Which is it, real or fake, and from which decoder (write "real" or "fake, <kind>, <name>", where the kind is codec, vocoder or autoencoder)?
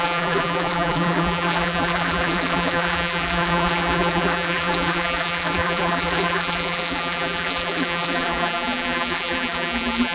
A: fake, vocoder, BigVGAN v2